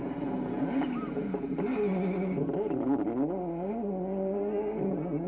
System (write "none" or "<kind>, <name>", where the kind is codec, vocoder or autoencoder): none